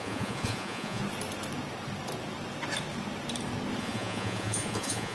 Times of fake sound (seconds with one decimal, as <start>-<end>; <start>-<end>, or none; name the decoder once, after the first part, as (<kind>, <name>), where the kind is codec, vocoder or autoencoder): 0.0-1.0 (vocoder, Vocos); 3.8-5.1